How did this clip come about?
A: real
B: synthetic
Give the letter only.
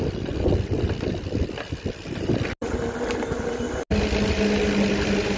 A